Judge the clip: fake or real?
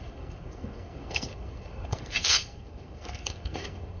fake